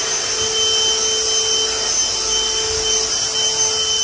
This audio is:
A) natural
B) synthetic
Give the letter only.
A